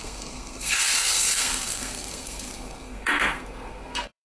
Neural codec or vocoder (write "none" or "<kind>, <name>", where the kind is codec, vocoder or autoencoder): codec, SNAC